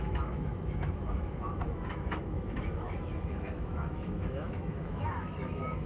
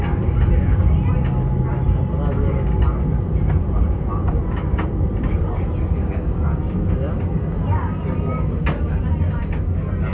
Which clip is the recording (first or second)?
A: second